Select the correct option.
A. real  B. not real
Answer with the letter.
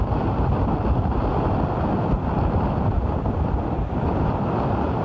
A